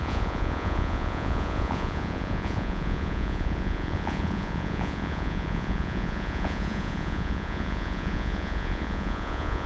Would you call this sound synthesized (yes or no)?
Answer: yes